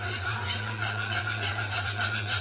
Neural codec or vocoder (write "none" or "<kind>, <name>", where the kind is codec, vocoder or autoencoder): vocoder, Vocos